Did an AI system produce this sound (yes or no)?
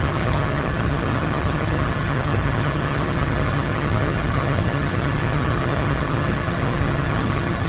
yes